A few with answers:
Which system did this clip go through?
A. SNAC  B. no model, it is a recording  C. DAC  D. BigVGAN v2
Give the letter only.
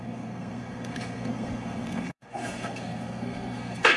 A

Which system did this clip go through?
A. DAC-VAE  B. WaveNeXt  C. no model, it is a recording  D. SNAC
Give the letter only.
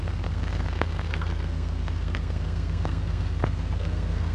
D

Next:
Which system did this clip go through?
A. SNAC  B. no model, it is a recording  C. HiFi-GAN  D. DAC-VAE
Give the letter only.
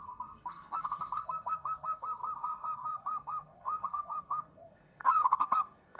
A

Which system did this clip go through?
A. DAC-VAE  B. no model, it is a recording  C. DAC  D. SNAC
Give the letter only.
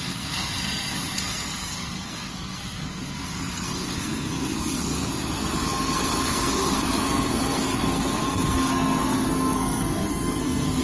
D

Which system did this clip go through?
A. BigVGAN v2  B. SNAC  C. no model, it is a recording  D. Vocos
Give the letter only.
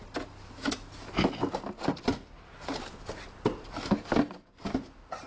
C